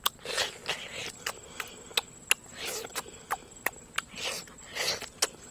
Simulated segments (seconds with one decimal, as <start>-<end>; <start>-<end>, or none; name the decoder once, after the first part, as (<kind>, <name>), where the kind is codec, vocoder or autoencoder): none